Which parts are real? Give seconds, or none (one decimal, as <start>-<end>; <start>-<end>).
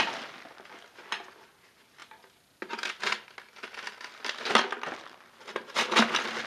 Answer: 0.0-6.5